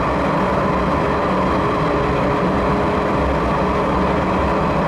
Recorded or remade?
recorded